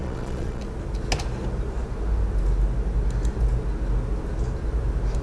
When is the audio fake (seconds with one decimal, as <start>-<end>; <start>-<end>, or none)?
0.0-0.6